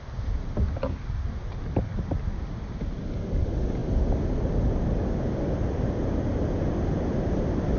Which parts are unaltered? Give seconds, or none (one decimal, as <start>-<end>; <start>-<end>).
0.0-7.8